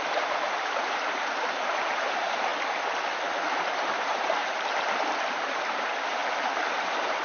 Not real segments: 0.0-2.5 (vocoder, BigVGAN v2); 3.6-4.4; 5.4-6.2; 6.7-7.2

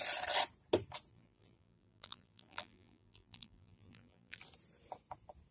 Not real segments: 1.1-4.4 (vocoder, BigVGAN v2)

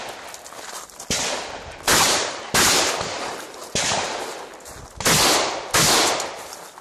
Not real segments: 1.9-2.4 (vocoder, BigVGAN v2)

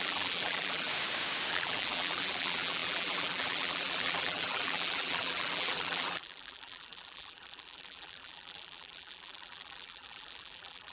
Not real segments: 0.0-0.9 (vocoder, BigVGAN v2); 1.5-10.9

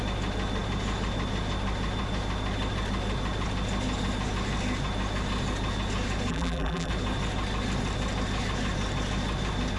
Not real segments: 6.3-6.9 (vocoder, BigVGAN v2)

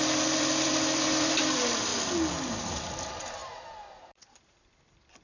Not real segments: 0.0-1.9 (vocoder, BigVGAN v2); 2.5-5.2

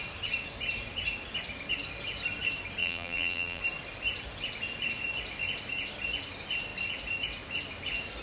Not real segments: 2.8-3.6 (vocoder, BigVGAN v2)